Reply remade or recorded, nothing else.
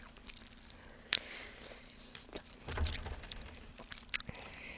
remade